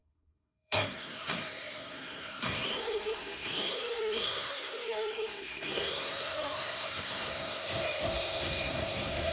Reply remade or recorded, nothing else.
remade